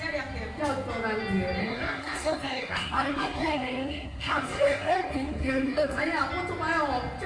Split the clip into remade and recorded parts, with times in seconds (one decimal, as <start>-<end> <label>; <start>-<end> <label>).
0.0-1.6 recorded; 1.6-6.0 remade; 6.0-7.3 recorded